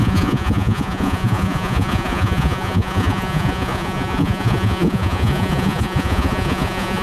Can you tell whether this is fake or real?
fake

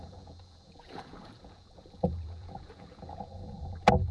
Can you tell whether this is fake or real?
fake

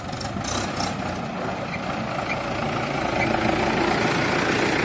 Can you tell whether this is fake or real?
real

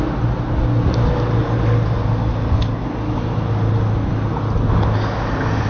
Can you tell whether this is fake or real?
real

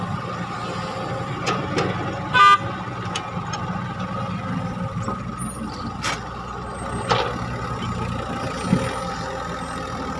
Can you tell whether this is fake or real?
real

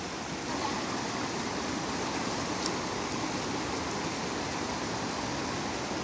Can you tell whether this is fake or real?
real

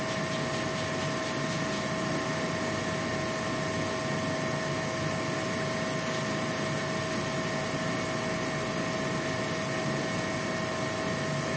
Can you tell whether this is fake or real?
real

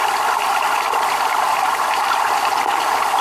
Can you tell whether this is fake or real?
real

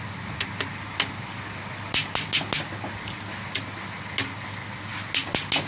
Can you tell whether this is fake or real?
real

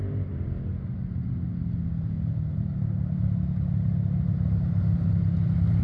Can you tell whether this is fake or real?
real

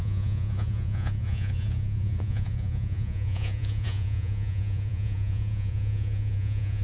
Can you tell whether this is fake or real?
fake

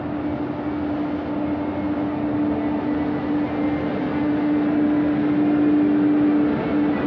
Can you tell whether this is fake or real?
real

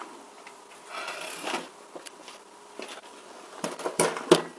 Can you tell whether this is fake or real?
real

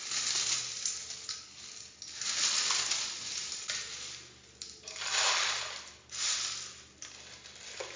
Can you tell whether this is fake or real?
real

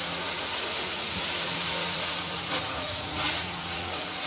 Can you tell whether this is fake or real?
fake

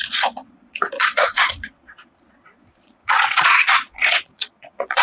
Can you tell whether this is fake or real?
fake